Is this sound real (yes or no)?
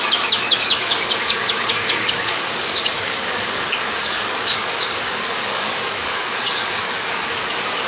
no